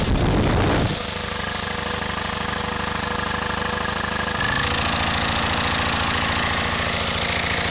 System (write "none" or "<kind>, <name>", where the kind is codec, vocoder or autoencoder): none